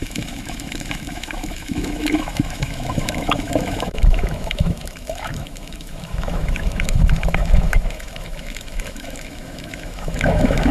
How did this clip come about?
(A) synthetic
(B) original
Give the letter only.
A